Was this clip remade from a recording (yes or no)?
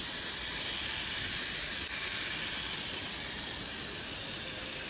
no